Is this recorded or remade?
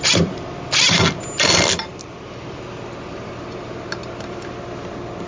recorded